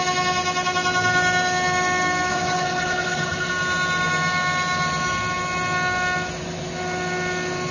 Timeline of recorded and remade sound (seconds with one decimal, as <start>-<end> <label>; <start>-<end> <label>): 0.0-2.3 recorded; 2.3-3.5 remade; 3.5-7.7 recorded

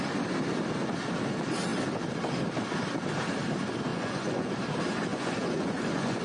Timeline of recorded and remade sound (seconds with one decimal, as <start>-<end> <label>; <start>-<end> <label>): 0.0-3.9 recorded; 3.9-4.5 remade; 4.5-5.1 recorded; 5.1-6.2 remade

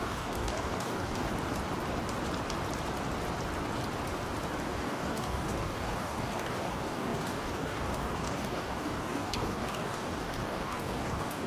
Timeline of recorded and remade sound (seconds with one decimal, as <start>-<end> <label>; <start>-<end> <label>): 0.0-1.3 remade; 1.3-4.6 recorded; 4.6-11.5 remade